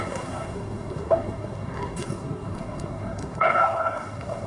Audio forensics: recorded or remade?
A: remade